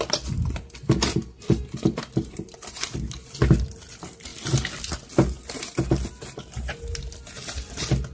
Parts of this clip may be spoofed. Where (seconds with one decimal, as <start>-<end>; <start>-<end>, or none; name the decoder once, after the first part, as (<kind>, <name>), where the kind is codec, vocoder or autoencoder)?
none